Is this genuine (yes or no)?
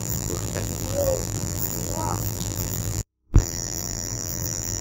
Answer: no